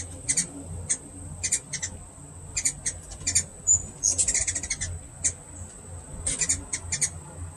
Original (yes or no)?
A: yes